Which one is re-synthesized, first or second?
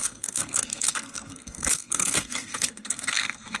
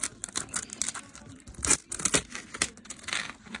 first